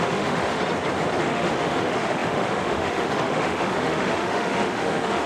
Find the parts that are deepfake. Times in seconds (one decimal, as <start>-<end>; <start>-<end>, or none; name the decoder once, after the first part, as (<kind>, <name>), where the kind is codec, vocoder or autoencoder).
0.0-0.6 (autoencoder, DAC-VAE); 1.2-5.3